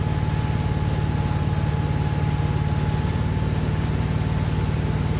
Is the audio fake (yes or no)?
no